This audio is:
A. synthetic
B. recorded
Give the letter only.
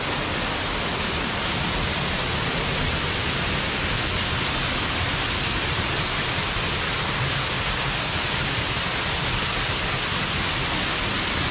B